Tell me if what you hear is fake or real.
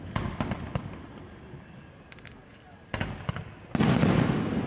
real